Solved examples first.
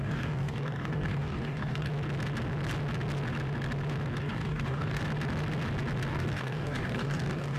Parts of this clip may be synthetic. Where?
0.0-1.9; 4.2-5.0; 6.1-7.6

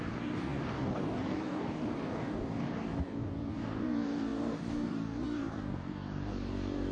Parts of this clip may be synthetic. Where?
0.0-6.9

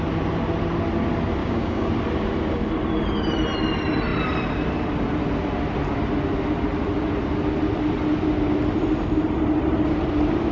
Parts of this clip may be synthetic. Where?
1.4-1.9